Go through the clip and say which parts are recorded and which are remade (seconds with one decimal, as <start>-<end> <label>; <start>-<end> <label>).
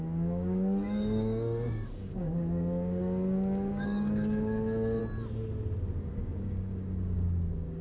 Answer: 0.0-5.0 remade; 5.0-6.0 recorded; 6.0-7.8 remade